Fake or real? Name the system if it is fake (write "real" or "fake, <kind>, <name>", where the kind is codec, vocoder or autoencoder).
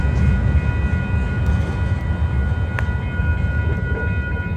real